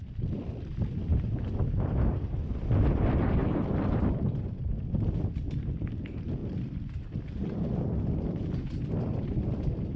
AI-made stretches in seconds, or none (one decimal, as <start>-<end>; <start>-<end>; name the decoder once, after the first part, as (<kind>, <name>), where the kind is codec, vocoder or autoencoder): 0.0-3.4 (vocoder, BigVGAN v2); 4.6-10.0